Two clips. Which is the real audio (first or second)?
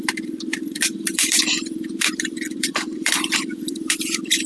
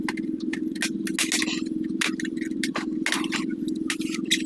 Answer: second